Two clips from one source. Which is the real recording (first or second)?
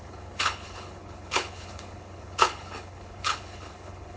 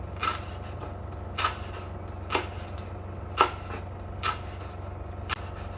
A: second